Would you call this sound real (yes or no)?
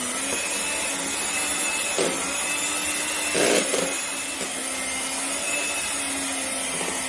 yes